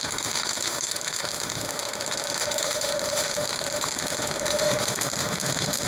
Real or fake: fake